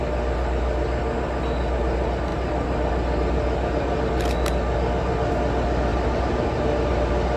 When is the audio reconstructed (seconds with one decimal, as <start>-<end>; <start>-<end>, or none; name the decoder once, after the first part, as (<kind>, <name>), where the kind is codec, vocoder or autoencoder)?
none